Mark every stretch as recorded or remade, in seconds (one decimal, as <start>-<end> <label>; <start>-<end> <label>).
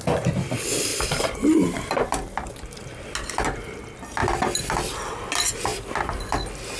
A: 0.0-0.9 recorded; 0.9-2.5 remade; 2.5-4.2 recorded; 4.2-5.1 remade; 5.1-6.8 recorded